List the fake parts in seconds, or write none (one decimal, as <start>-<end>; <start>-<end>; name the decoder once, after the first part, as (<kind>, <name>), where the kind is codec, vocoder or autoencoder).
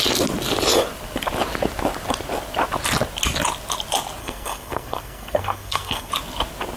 4.2-6.1 (codec, SNAC)